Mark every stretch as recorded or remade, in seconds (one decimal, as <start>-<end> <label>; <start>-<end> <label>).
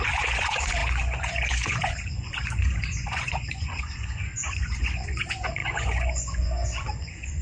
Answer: 0.0-7.4 remade